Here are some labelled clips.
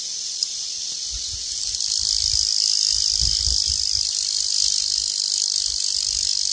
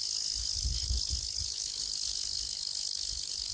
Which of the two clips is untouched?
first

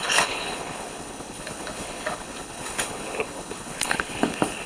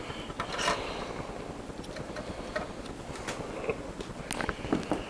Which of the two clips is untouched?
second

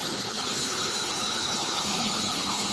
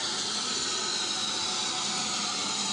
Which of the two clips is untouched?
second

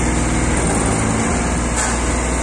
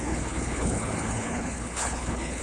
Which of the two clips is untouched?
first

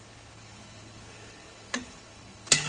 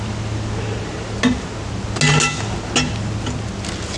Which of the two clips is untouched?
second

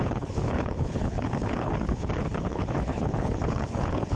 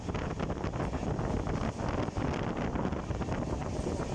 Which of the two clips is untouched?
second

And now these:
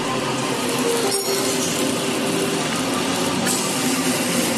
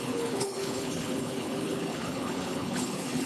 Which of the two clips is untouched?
first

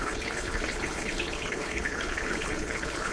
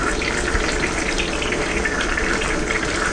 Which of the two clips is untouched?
second